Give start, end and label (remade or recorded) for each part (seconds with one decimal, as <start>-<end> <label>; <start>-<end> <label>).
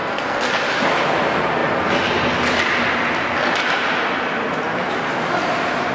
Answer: 0.0-0.6 remade; 0.6-5.9 recorded